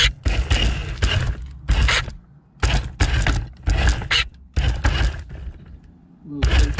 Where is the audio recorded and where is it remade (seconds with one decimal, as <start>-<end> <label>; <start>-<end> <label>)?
0.0-6.8 recorded

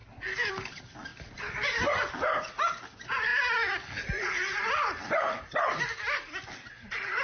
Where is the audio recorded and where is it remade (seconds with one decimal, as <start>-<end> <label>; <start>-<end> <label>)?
0.0-7.2 recorded

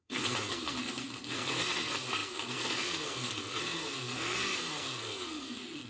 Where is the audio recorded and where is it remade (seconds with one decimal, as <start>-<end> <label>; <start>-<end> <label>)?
0.0-5.9 remade

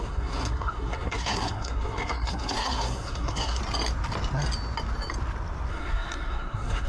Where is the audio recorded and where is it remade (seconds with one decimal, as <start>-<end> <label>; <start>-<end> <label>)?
0.0-3.6 remade; 3.6-5.7 recorded; 5.7-6.9 remade

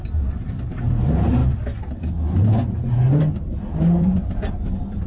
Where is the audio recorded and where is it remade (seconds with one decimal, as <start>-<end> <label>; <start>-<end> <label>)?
0.0-5.1 recorded

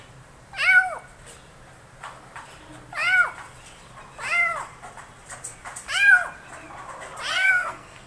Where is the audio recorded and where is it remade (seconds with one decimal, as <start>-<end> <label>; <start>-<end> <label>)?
0.0-7.3 recorded; 7.3-8.1 remade

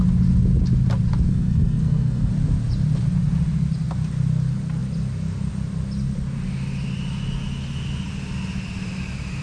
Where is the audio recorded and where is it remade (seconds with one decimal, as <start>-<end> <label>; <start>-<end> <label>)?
0.0-1.3 recorded; 1.3-2.3 remade; 2.3-9.4 recorded